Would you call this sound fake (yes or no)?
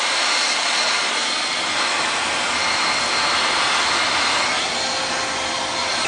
no